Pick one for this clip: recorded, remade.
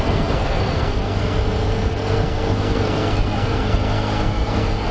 remade